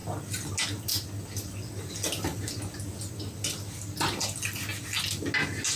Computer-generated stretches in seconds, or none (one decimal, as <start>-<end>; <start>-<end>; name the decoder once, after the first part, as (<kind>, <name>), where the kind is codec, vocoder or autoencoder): none